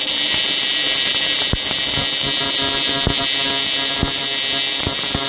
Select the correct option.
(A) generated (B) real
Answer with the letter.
B